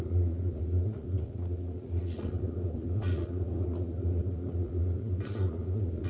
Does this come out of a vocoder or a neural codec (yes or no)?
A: yes